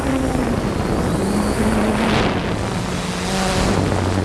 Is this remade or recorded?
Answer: recorded